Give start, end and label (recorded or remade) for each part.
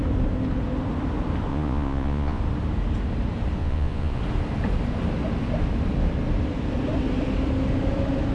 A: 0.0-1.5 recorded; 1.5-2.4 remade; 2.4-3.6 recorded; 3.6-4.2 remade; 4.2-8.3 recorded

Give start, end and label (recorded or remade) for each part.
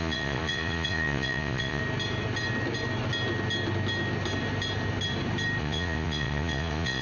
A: 0.0-1.8 remade; 1.8-5.6 recorded; 5.6-7.0 remade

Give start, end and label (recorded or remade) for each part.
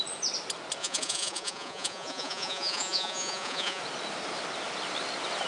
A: 0.0-0.8 recorded; 0.8-3.8 remade; 3.8-5.5 recorded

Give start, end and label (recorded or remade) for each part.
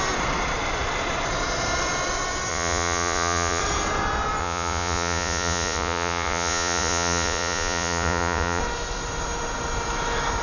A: 0.0-2.5 recorded; 2.5-3.6 remade; 3.6-4.4 recorded; 4.4-8.6 remade; 8.6-10.4 recorded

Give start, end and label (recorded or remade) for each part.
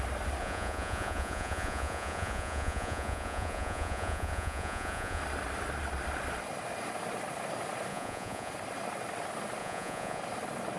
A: 0.0-0.4 recorded; 0.4-5.2 remade; 5.2-7.9 recorded; 7.9-8.5 remade; 8.5-9.6 recorded; 9.6-10.2 remade; 10.2-10.8 recorded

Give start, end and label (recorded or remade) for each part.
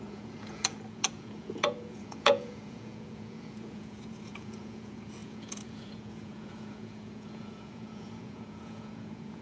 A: 0.0-9.4 remade